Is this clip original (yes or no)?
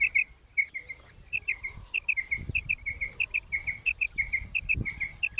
yes